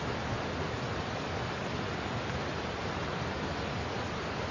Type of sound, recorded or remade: recorded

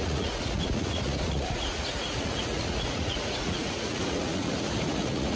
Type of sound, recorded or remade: remade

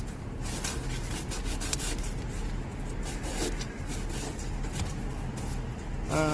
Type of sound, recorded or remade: recorded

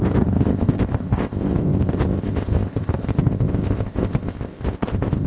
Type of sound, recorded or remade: remade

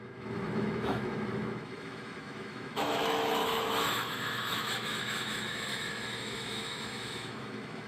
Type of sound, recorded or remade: remade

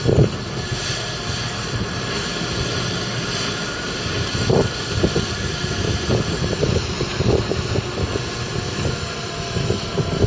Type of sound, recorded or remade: remade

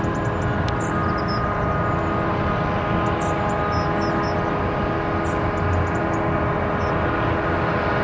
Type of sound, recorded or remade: recorded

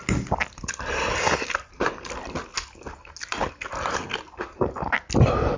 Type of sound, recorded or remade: recorded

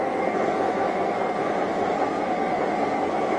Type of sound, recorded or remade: remade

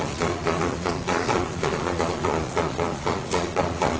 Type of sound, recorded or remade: remade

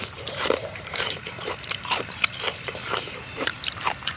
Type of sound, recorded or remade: remade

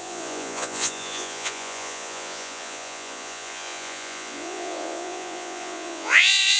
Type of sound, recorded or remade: remade